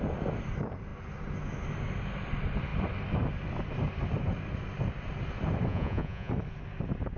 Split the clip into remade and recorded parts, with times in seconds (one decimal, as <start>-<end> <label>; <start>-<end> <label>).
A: 0.0-5.7 recorded; 5.7-6.3 remade; 6.3-7.2 recorded